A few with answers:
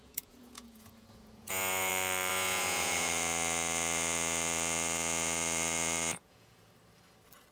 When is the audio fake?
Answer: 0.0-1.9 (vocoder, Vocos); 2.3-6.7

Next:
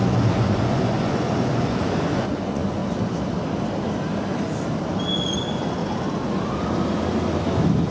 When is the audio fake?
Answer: 0.0-2.8 (vocoder, Vocos); 5.1-5.8

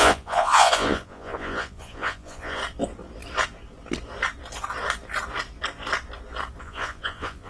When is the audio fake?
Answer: 0.0-2.6 (vocoder, Vocos); 6.6-7.5